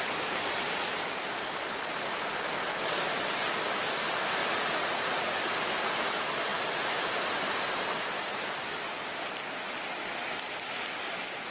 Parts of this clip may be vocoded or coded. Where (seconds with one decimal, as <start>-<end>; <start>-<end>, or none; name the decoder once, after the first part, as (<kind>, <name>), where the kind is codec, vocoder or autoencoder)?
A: 4.4-5.4 (vocoder, Vocos)